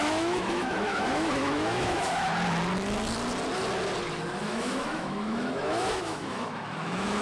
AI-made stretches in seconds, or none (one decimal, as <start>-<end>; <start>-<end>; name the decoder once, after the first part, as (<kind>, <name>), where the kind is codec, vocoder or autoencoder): 0.0-2.3 (autoencoder, DAC-VAE); 4.4-7.2

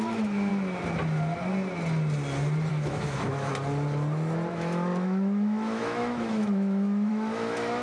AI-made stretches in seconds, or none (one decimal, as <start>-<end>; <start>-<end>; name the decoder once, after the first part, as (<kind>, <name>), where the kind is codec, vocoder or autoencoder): 0.0-0.5 (autoencoder, DAC-VAE); 2.7-3.5; 4.5-7.8

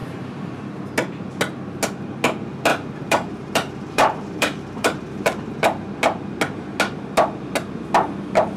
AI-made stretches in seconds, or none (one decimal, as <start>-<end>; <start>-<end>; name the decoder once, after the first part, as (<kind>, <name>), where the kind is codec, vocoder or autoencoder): 0.0-0.7 (vocoder, BigVGAN v2); 2.7-5.5

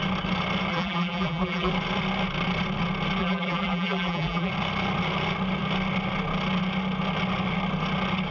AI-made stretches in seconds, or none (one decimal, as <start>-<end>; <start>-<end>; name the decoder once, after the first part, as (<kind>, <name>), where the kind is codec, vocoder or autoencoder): 0.7-1.7 (vocoder, BigVGAN v2); 3.2-4.5

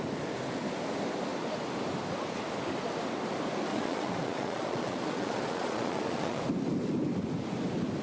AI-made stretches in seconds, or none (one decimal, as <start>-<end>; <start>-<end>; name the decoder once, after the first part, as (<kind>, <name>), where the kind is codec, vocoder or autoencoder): 3.7-6.4 (vocoder, Vocos)

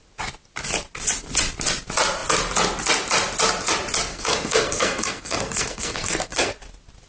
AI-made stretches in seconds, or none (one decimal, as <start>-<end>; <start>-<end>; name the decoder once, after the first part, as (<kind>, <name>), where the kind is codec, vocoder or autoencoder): 4.1-6.5 (codec, SNAC)